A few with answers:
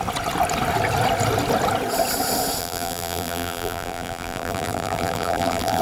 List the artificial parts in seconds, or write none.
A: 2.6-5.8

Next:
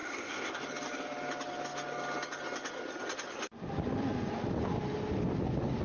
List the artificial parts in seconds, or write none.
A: 0.0-0.6

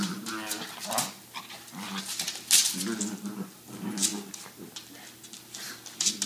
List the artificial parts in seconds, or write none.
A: none

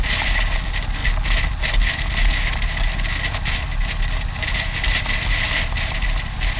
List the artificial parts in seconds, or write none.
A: none

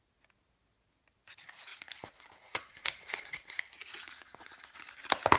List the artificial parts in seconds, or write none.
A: 1.7-4.9

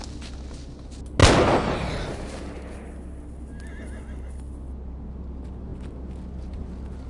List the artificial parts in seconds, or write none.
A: none

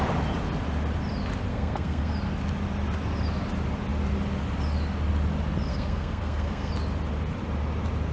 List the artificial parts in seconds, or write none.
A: 1.5-2.1; 5.7-6.7

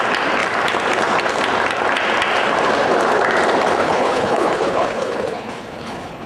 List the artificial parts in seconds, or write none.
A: 3.8-6.3